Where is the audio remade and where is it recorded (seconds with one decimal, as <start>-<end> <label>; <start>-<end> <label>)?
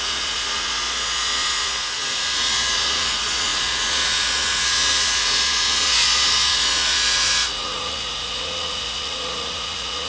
0.0-10.1 remade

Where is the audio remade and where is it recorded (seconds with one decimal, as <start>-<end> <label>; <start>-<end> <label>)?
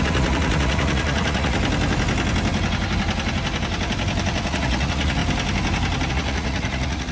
0.0-1.6 remade; 1.6-4.5 recorded; 4.5-5.2 remade; 5.2-6.1 recorded; 6.1-7.1 remade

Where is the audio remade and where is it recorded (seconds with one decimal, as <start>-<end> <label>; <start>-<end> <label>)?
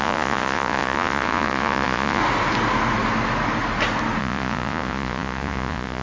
0.0-2.2 remade; 2.2-4.2 recorded; 4.2-6.0 remade